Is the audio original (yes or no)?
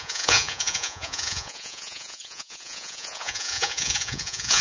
no